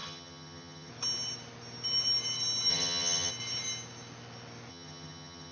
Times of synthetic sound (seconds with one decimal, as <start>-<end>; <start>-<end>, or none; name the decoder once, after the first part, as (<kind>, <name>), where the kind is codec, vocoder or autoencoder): 0.0-0.9 (vocoder, HiFi-GAN); 2.7-3.3; 4.7-5.5